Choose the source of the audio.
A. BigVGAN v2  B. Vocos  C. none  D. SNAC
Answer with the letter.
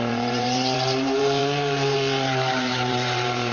A